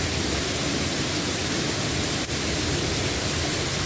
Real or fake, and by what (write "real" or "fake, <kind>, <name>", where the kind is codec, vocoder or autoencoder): real